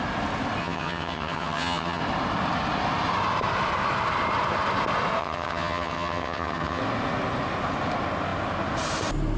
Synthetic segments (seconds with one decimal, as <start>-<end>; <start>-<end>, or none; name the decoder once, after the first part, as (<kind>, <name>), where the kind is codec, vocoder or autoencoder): 0.6-2.0 (vocoder, HiFi-GAN); 5.2-6.8